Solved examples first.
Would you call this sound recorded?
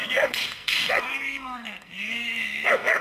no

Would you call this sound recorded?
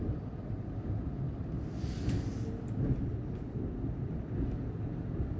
yes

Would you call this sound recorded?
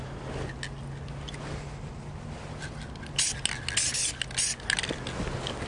yes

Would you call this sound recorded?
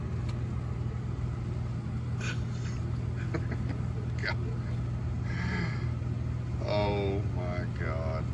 yes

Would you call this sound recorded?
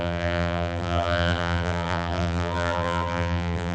no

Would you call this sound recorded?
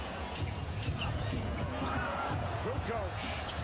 no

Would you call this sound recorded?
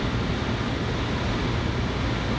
yes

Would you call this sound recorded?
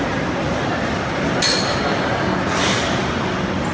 yes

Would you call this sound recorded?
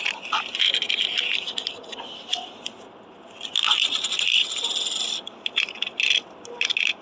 yes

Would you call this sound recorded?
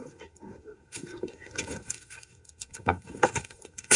no